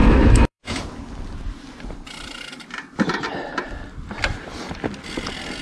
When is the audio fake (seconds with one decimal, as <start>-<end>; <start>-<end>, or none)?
0.0-0.8